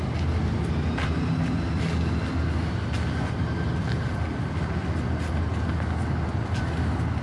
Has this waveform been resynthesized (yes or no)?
no